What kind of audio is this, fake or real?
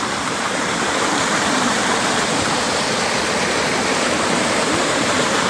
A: fake